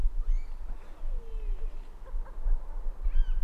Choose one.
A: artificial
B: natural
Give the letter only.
B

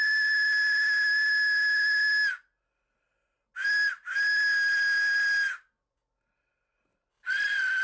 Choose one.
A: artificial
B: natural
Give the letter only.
B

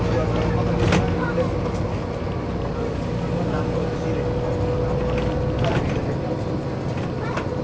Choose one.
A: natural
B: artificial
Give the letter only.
A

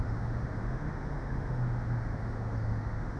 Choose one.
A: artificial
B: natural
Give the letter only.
A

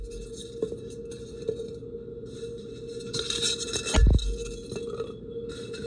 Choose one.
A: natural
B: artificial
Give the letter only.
A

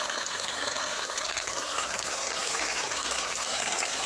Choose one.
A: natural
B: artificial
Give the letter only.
B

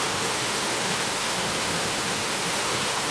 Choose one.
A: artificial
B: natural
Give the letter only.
A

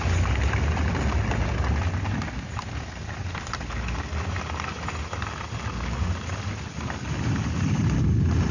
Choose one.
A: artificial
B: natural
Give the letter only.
B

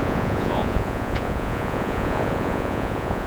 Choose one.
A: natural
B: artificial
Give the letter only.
B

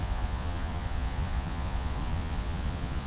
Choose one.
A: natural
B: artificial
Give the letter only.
B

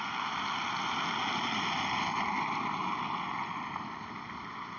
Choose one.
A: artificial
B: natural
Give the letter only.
B